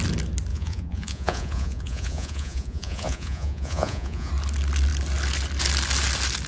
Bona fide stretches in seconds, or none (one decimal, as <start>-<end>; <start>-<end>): 0.0-0.5; 4.3-6.5